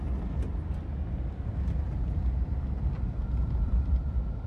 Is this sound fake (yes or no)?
yes